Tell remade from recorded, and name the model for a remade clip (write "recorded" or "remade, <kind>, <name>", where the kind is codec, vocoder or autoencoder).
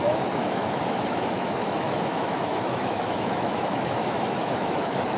remade, autoencoder, DAC-VAE